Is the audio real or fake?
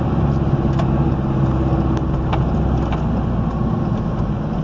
real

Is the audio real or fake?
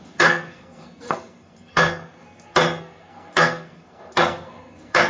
fake